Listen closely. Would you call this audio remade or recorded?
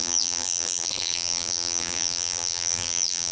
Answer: remade